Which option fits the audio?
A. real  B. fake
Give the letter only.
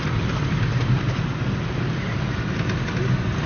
A